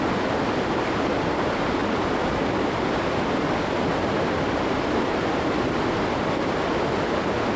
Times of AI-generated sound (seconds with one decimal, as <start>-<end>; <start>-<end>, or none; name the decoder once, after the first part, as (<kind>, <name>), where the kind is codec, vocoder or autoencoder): none

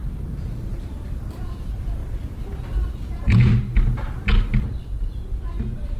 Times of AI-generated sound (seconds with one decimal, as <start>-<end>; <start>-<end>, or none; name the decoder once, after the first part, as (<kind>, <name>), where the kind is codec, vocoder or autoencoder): 0.7-2.0 (vocoder, BigVGAN v2); 2.9-3.7; 5.5-6.0

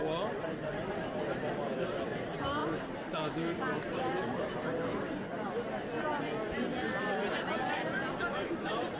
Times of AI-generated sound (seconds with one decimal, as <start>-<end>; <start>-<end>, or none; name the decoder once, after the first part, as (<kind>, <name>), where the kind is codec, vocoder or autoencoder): 2.6-5.5 (vocoder, BigVGAN v2)